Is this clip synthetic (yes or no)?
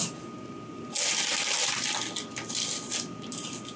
no